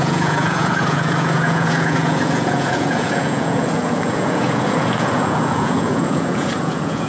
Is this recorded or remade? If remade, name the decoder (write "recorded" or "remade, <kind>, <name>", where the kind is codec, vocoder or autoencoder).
remade, vocoder, Vocos